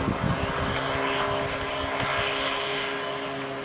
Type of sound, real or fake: real